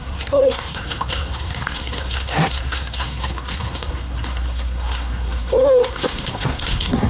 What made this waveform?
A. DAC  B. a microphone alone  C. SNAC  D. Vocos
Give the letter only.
C